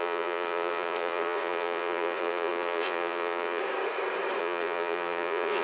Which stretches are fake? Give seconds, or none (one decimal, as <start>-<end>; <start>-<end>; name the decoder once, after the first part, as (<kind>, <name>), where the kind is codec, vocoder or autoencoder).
0.0-3.6 (vocoder, Vocos); 4.4-5.6